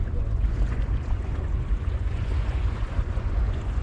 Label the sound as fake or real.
fake